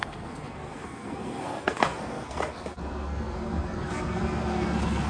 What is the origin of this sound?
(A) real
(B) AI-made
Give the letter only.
B